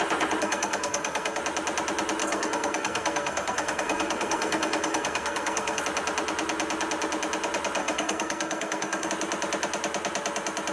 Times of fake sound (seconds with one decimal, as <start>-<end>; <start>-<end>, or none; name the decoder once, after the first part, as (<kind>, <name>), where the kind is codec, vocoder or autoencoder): 0.4-1.4 (codec, SNAC); 2.2-5.8; 7.8-9.1